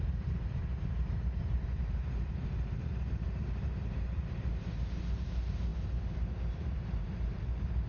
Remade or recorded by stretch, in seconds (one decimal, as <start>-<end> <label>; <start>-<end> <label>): 0.0-7.9 remade